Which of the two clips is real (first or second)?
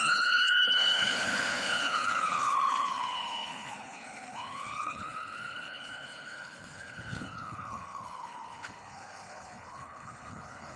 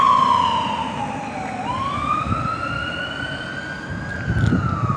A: second